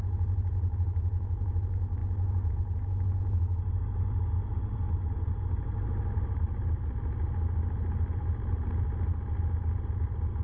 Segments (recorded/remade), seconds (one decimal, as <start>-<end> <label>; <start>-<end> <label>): 0.0-10.4 recorded